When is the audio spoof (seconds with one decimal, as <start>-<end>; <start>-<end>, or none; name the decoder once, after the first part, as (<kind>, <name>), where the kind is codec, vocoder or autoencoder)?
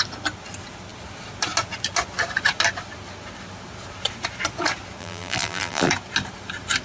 5.0-5.9 (vocoder, BigVGAN v2)